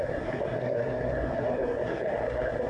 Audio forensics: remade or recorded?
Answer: remade